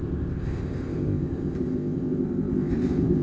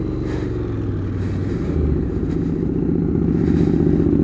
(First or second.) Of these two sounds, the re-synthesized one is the first